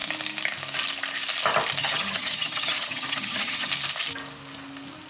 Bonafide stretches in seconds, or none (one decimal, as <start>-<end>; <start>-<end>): 0.0-1.8; 3.7-5.1